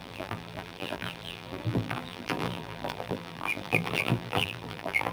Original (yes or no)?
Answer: no